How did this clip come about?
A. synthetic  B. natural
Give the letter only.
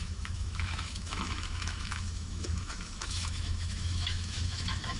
A